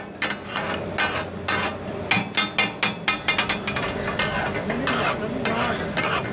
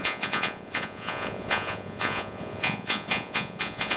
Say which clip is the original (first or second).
first